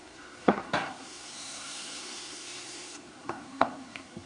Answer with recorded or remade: remade